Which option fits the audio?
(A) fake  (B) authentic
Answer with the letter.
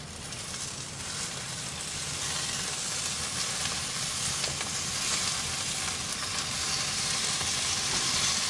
B